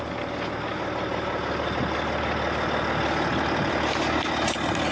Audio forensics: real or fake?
real